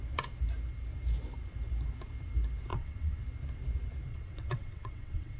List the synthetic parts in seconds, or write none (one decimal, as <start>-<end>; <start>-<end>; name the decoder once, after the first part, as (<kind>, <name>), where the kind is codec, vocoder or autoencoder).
2.7-3.2 (vocoder, WaveNeXt); 4.1-5.4